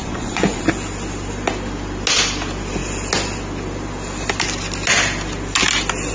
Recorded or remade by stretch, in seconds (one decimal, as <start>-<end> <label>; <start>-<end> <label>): 0.0-0.6 remade; 0.6-6.1 recorded